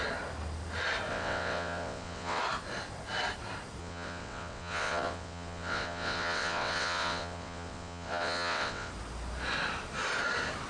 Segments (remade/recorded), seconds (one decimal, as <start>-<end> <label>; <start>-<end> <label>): 0.0-1.1 recorded; 1.1-2.4 remade; 2.4-3.8 recorded; 3.8-8.9 remade; 8.9-10.7 recorded